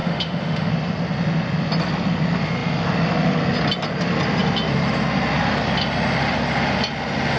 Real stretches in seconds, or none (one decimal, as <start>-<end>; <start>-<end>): 0.7-7.4